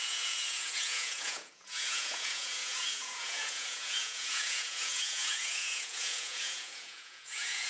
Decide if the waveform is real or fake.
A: fake